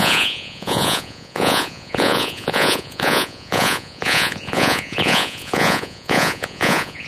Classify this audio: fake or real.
fake